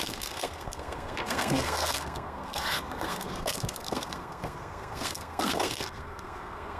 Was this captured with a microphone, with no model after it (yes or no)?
no